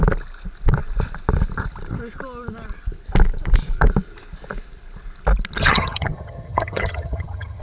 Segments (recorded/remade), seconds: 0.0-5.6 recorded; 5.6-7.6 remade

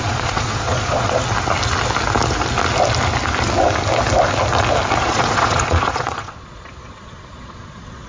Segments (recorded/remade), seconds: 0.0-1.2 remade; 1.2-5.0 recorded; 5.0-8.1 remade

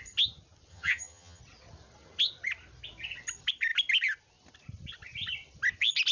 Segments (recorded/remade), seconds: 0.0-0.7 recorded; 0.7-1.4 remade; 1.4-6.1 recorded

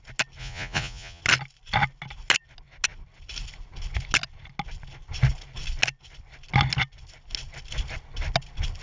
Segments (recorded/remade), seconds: 0.0-0.4 recorded; 0.4-1.2 remade; 1.2-8.8 recorded